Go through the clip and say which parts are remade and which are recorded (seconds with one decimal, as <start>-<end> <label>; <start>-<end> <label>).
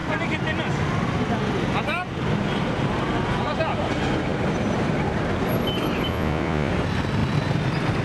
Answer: 0.0-6.1 recorded; 6.1-6.7 remade; 6.7-8.0 recorded